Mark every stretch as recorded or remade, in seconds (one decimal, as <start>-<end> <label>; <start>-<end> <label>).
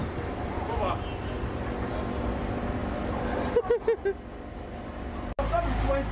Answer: 0.0-6.1 recorded